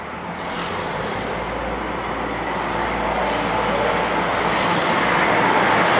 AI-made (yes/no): no